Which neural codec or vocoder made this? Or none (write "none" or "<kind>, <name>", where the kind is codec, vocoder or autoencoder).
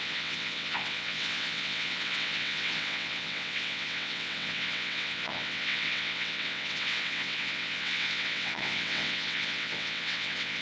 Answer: vocoder, WaveNeXt